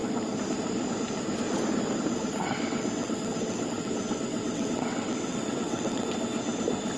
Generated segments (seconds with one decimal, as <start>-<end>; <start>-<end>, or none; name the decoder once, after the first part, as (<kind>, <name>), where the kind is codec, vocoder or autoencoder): 2.4-6.6 (vocoder, WaveNeXt)